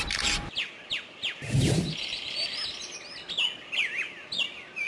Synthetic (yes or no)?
no